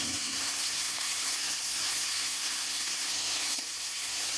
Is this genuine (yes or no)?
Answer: no